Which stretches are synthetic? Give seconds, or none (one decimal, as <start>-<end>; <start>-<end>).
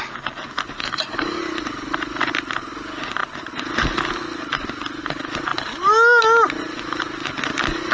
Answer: 0.8-1.4